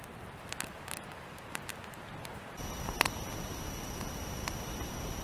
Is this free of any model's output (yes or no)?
yes